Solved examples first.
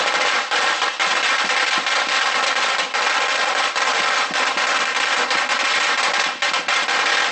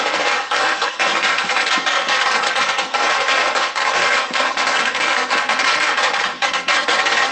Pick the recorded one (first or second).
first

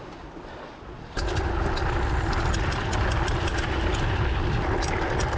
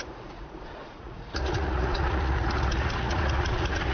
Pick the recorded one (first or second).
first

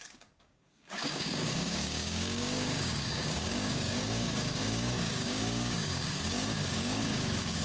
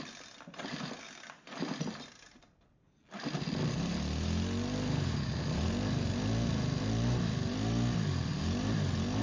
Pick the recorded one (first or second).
second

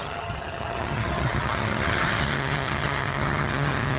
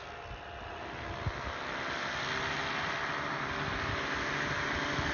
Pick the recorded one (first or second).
second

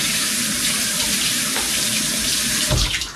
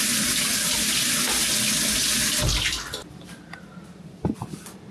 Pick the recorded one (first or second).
second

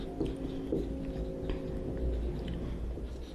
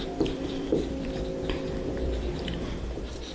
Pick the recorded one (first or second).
first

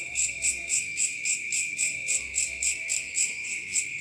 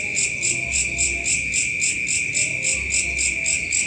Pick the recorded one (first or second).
second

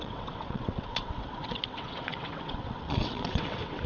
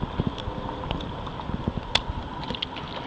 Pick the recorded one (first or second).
second